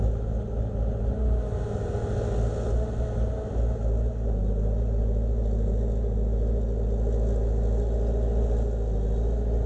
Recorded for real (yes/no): yes